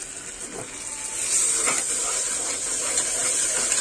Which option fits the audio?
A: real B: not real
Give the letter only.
A